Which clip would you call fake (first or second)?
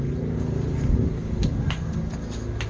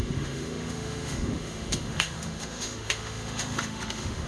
second